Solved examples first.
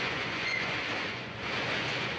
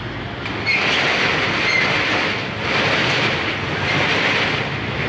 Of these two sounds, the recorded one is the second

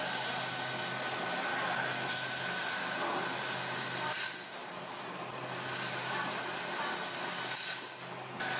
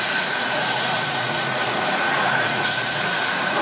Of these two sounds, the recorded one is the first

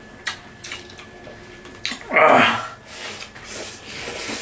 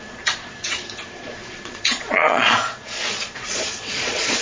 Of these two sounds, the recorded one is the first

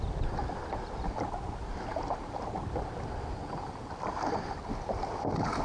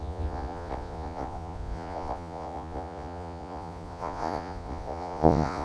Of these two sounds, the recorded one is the first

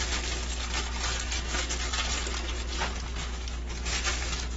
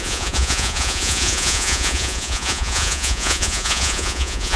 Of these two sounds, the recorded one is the first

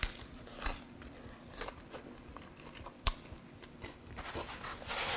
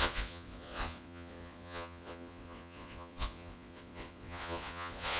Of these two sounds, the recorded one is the first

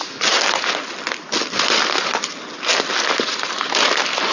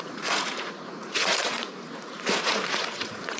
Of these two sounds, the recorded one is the first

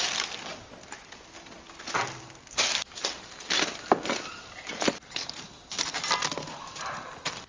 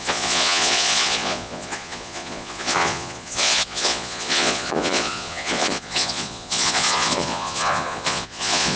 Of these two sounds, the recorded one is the first